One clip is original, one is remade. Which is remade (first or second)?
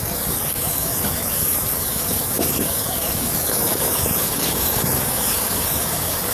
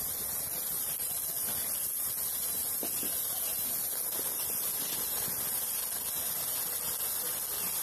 first